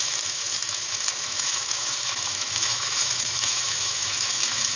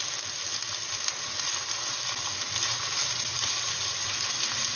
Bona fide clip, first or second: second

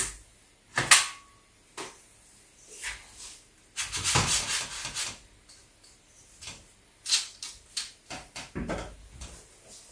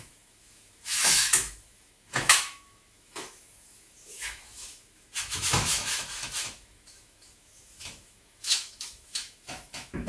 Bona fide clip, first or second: first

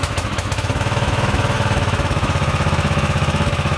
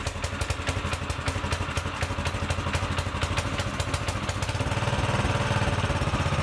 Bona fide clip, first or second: second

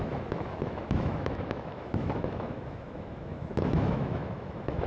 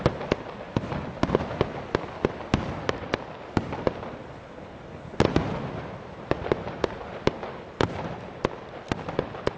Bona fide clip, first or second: second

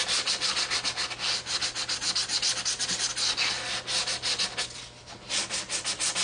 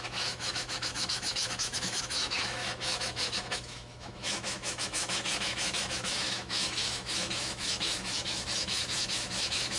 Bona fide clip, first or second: first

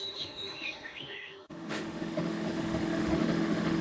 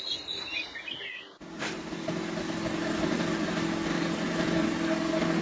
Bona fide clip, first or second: second